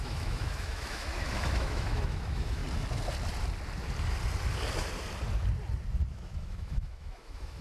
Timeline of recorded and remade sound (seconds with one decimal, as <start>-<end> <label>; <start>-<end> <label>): 0.0-2.6 remade; 2.6-6.1 recorded; 6.1-7.6 remade